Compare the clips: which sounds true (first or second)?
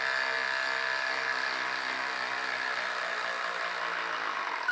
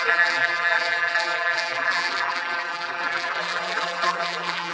first